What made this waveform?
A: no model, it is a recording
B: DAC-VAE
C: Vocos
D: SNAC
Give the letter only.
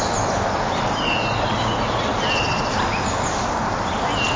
A